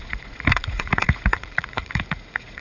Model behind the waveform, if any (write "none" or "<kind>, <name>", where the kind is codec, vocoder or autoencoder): vocoder, Vocos